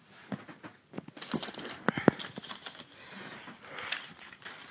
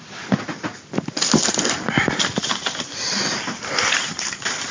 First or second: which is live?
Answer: first